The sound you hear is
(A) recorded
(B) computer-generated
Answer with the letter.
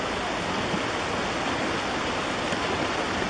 A